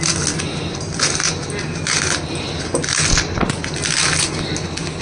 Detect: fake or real real